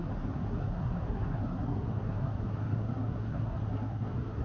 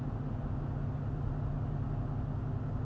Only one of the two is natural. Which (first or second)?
second